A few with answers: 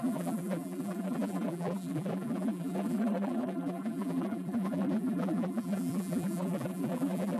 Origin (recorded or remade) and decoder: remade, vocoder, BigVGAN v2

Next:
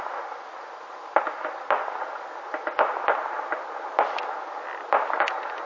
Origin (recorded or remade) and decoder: recorded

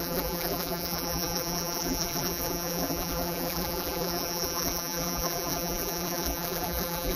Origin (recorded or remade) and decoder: remade, vocoder, BigVGAN v2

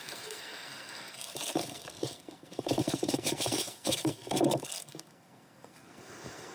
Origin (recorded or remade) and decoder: remade, codec, SNAC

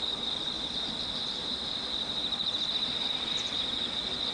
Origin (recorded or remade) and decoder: recorded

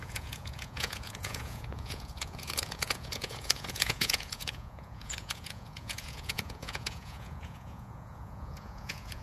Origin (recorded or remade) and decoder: remade, vocoder, Vocos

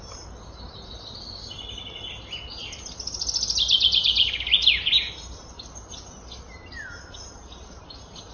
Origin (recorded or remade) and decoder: recorded